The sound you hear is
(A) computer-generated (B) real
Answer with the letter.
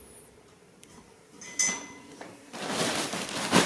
B